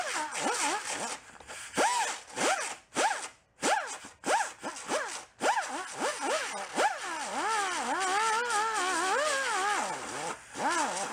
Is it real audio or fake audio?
real